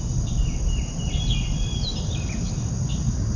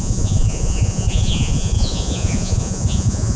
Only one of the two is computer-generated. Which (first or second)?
second